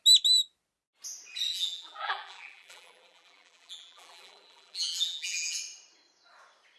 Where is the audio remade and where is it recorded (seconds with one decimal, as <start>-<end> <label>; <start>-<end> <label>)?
0.0-1.5 recorded; 1.5-5.6 remade; 5.6-6.8 recorded